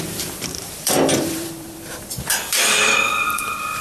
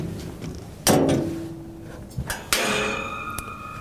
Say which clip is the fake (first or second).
first